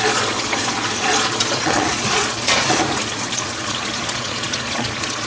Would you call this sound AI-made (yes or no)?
yes